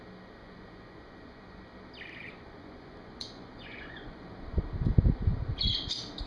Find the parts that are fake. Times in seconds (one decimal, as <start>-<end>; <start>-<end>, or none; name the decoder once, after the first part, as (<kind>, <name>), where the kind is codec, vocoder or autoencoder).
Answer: 0.4-1.7 (vocoder, Vocos); 2.2-4.4